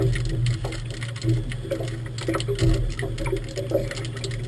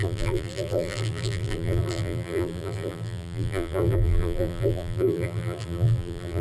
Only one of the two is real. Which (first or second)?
first